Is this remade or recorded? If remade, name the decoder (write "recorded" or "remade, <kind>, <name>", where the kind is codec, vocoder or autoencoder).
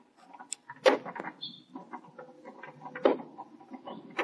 recorded